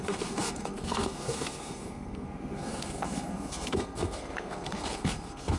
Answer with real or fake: fake